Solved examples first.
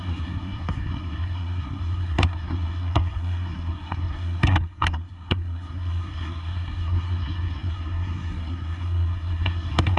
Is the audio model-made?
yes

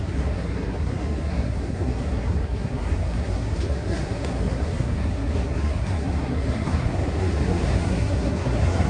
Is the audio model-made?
yes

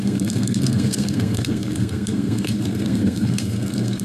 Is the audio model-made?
yes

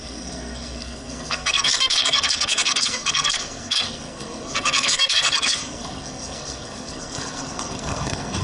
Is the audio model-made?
yes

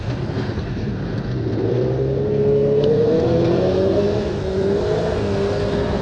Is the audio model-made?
yes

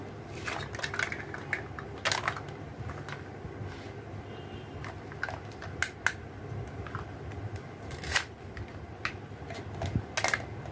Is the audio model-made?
no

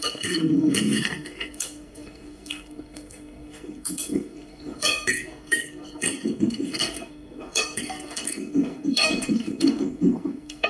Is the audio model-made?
yes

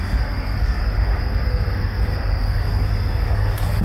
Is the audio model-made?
yes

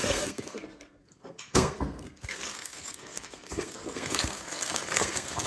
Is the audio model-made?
yes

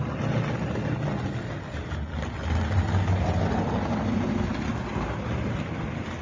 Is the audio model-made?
no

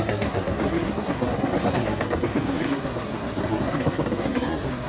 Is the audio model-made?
yes